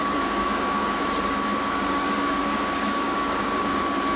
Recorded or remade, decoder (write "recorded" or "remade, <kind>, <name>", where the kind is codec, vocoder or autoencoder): remade, codec, DAC